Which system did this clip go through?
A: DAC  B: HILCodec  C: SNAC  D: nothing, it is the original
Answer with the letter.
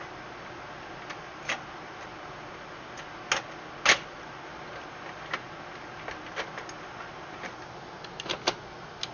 D